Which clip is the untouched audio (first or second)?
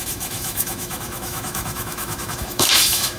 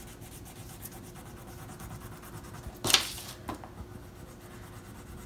second